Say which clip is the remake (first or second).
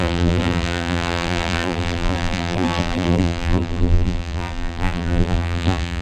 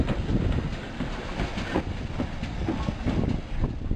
first